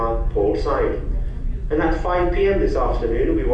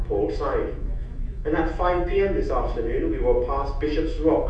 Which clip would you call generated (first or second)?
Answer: second